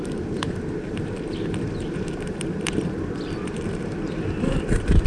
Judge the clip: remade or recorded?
remade